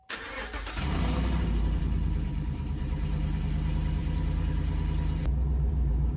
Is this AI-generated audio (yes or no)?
yes